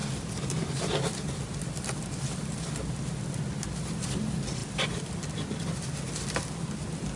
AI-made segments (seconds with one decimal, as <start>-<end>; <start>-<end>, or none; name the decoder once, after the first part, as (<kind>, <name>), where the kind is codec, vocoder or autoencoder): none